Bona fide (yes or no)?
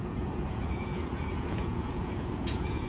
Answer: no